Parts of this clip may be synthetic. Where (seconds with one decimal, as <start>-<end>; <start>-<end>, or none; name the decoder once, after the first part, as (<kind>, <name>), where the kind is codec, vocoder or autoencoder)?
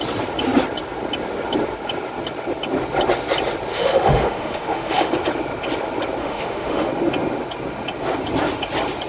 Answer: 3.7-5.1 (autoencoder, DAC-VAE); 6.2-6.9